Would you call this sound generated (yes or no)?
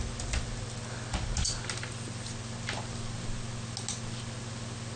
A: no